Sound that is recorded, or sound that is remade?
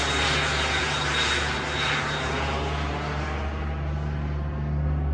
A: recorded